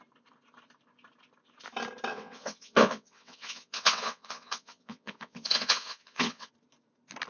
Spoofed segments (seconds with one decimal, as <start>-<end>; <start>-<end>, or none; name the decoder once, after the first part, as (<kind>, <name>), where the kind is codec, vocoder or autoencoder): 2.1-6.5 (vocoder, WaveNeXt)

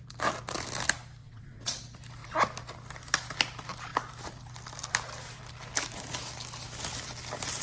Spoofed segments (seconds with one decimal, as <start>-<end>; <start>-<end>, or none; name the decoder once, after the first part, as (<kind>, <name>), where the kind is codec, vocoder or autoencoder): 1.2-1.8 (vocoder, WaveNeXt)